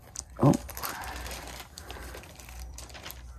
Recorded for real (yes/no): no